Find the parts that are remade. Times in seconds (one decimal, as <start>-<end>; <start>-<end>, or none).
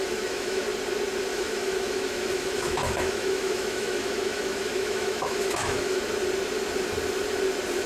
0.0-0.6; 1.3-6.0